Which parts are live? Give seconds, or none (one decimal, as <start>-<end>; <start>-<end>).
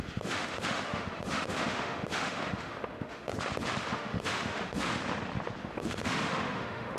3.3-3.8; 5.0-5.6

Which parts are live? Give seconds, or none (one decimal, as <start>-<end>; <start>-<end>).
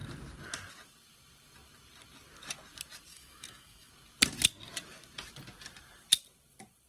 0.0-3.1; 3.9-6.9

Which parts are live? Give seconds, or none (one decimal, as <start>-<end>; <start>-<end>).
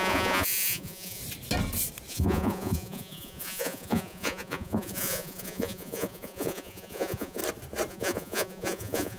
1.2-2.1; 7.4-7.9